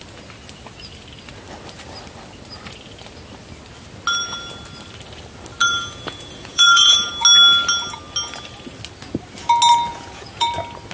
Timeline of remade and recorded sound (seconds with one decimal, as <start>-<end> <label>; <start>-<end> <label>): 0.0-5.6 recorded; 5.6-7.1 remade; 7.1-9.9 recorded; 9.9-10.5 remade; 10.5-10.9 recorded